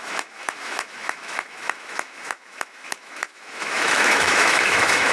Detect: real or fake fake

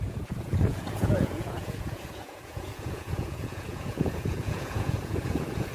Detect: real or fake fake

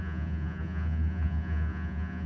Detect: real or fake fake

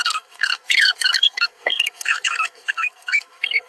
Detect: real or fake fake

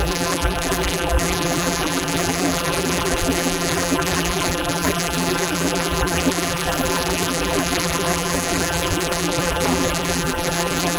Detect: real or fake fake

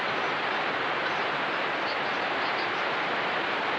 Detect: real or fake real